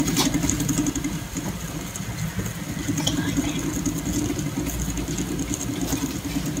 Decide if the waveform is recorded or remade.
recorded